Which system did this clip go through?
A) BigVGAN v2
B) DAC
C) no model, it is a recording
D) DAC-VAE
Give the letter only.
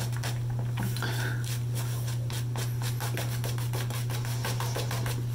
C